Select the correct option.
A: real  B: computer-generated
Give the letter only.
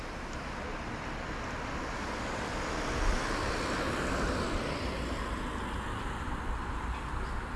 A